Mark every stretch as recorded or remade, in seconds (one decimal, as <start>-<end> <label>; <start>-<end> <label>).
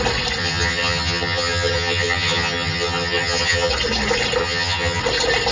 0.0-0.4 recorded; 0.4-3.7 remade; 3.7-4.4 recorded; 4.4-5.0 remade; 5.0-5.5 recorded